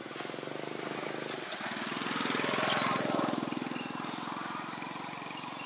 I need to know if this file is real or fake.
real